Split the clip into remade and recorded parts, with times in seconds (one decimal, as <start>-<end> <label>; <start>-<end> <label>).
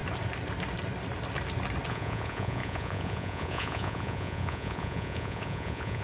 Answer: 0.0-1.9 recorded; 1.9-6.0 remade